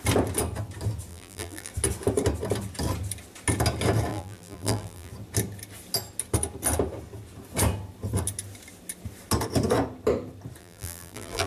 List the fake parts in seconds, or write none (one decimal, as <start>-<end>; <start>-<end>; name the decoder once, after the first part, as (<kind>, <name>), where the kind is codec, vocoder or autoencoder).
1.1-1.7 (vocoder, BigVGAN v2); 4.1-5.1; 10.6-11.5